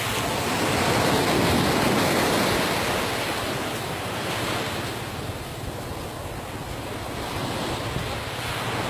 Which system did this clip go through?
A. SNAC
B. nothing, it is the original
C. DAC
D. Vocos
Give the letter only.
B